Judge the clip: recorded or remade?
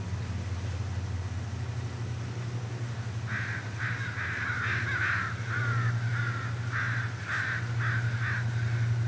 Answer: recorded